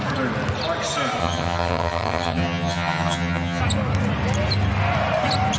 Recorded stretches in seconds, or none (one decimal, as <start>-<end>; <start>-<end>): 0.0-1.2; 3.6-5.6